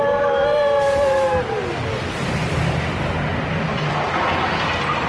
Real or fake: real